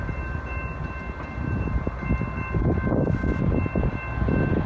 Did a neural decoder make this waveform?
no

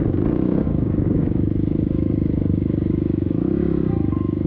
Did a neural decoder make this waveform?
yes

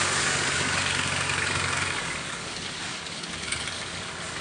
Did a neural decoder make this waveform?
yes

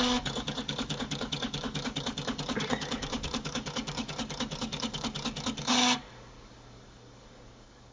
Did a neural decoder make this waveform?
yes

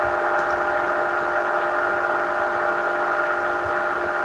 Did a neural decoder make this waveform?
no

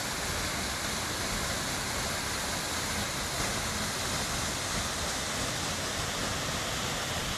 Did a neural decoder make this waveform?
no